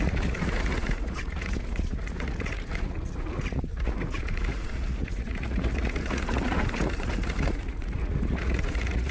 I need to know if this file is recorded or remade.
remade